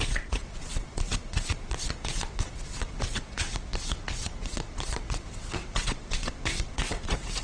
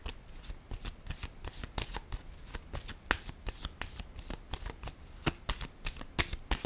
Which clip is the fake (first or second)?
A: first